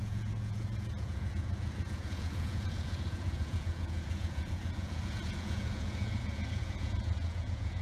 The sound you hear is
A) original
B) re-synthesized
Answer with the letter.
B